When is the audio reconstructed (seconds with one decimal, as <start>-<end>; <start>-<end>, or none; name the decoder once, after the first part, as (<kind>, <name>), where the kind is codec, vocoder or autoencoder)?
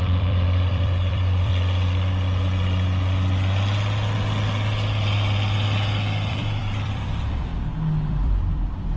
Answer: 0.0-1.5 (vocoder, BigVGAN v2); 6.3-7.5; 8.1-9.0